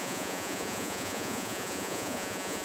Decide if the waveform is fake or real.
fake